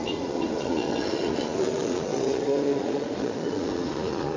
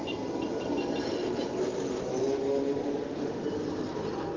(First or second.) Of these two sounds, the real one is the second